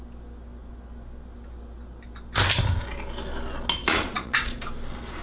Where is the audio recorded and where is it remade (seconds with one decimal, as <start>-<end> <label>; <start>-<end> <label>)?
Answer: 0.0-3.8 recorded; 3.8-4.6 remade; 4.6-5.2 recorded